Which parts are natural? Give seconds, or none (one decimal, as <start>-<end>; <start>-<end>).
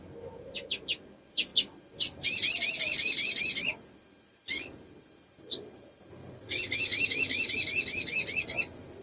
0.0-9.0